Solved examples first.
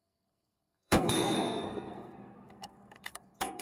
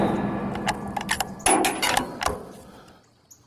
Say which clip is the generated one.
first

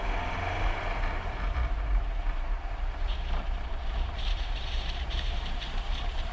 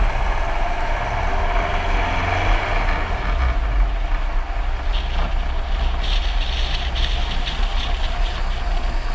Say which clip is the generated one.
first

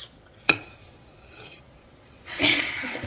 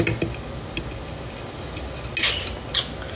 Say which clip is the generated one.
first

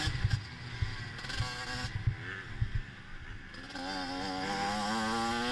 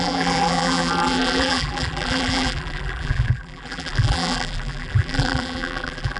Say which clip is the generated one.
second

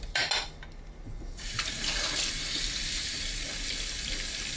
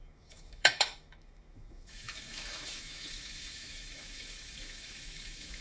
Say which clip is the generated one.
second